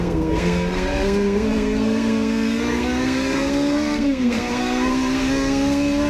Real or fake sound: fake